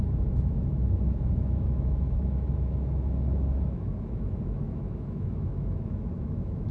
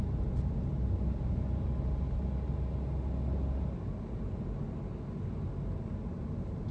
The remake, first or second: first